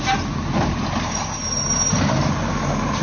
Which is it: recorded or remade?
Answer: remade